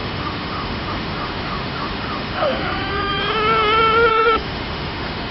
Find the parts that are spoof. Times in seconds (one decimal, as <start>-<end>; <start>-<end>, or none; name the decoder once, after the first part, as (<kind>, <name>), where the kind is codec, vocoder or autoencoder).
0.0-3.2 (autoencoder, DAC-VAE); 4.1-5.3